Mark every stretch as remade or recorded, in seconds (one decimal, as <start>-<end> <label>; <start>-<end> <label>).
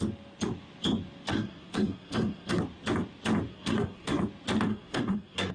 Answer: 0.0-1.3 recorded; 1.3-2.6 remade; 2.6-3.5 recorded; 3.5-4.2 remade; 4.2-4.7 recorded; 4.7-5.5 remade